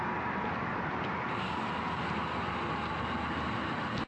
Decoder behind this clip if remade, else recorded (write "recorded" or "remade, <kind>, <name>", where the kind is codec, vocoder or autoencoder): recorded